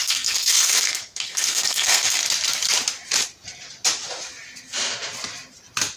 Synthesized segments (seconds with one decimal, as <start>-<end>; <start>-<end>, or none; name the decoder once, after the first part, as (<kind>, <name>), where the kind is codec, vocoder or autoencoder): 0.0-2.2 (codec, SNAC)